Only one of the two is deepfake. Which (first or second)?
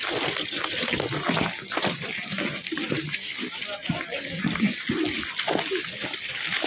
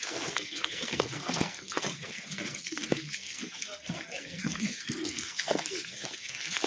second